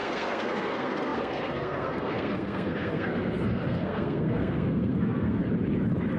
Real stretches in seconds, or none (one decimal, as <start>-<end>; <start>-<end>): 5.4-6.2